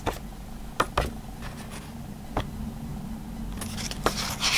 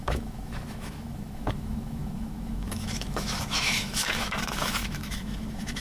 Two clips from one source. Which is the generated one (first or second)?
second